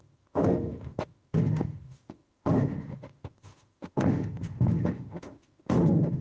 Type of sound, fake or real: fake